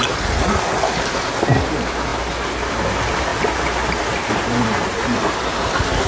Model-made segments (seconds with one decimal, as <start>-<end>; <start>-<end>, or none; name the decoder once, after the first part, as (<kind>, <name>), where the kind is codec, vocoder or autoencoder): none